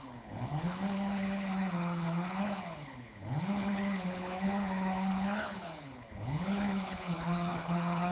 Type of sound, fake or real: fake